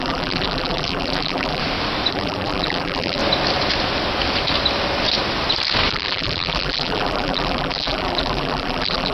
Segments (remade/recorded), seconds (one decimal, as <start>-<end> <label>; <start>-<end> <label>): 0.0-1.6 remade; 1.6-2.1 recorded; 2.1-3.2 remade; 3.2-5.9 recorded; 5.9-9.1 remade